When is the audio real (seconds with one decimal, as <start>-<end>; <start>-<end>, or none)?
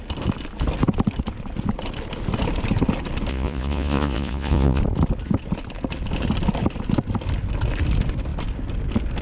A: 0.0-3.3; 4.8-9.2